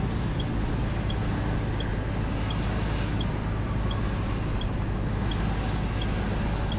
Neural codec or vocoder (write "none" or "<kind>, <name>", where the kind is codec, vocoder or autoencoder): none